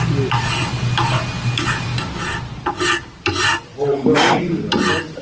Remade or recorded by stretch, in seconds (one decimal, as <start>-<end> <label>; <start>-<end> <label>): 0.0-5.2 recorded